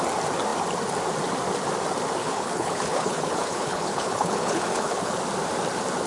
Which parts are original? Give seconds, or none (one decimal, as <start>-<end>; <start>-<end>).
0.0-2.2; 5.2-6.1